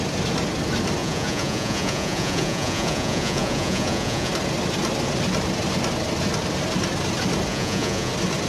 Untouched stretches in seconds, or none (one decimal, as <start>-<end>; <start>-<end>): 0.0-1.0; 4.3-7.5; 8.1-8.5